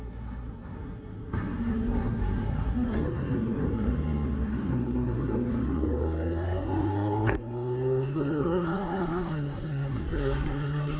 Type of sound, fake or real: fake